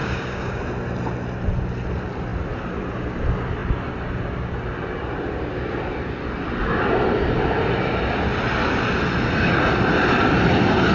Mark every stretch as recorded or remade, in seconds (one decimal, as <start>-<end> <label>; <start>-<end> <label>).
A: 0.0-0.6 remade; 0.6-10.9 recorded